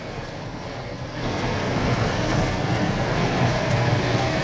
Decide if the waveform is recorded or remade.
remade